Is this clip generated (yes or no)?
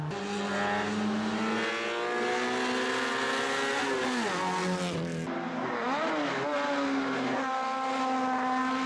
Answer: no